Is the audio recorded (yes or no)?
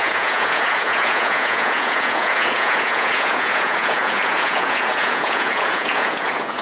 no